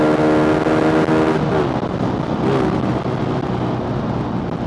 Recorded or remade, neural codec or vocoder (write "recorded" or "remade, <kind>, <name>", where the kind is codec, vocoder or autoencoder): recorded